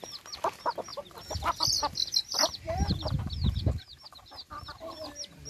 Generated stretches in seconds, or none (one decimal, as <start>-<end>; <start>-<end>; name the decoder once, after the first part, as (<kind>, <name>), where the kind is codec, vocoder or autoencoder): 2.3-5.5 (vocoder, BigVGAN v2)